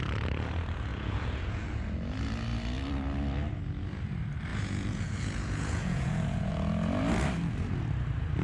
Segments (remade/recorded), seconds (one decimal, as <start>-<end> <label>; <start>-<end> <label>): 0.0-0.9 recorded; 0.9-1.7 remade; 1.7-4.5 recorded; 4.5-6.5 remade; 6.5-8.4 recorded